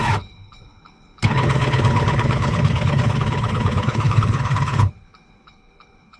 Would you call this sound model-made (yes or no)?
yes